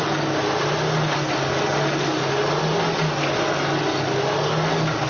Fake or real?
real